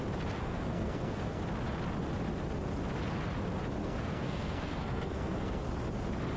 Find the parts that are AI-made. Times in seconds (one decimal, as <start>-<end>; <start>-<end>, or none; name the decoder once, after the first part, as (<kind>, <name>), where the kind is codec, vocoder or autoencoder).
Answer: 0.4-1.4 (codec, SNAC); 3.8-5.7